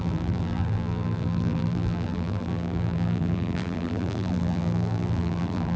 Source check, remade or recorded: remade